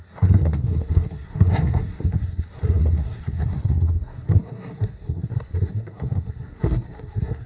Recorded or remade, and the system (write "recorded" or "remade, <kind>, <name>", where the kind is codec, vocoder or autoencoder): remade, codec, SNAC